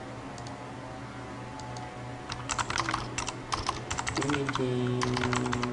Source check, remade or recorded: recorded